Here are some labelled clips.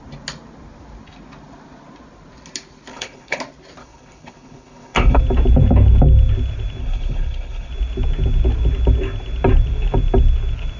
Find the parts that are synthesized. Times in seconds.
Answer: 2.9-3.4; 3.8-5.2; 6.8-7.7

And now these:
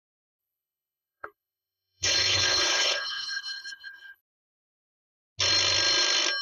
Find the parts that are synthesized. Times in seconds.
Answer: 0.4-4.2

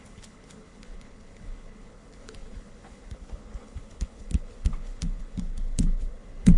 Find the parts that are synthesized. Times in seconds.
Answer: 0.0-6.6

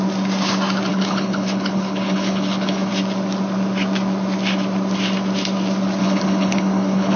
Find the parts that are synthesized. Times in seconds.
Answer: 0.9-2.9; 6.0-7.2

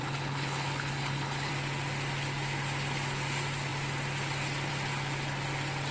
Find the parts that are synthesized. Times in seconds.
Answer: 0.0-1.5